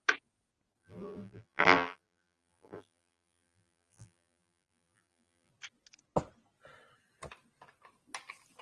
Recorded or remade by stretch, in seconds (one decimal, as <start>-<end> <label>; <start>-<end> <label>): 0.0-0.8 recorded; 0.8-5.5 remade; 5.5-8.6 recorded